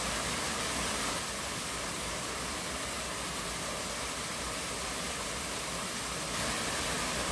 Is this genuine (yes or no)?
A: yes